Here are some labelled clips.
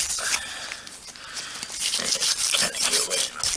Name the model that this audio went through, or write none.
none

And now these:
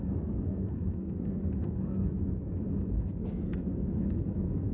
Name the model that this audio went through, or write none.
codec, SNAC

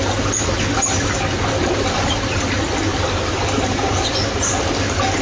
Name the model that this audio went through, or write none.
none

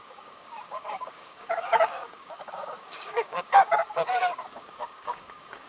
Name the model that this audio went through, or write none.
codec, DAC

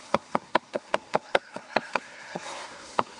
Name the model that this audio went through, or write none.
codec, SNAC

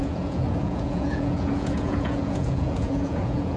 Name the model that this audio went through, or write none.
vocoder, Vocos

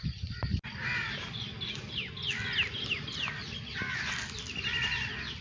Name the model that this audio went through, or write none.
none